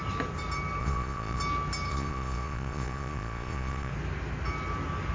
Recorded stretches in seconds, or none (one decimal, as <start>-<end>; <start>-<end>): 0.0-0.8; 1.4-1.9; 3.9-5.1